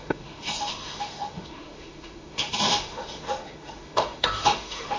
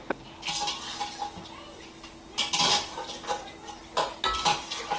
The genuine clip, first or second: second